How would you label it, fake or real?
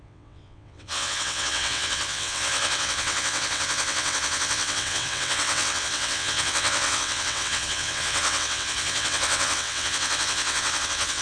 fake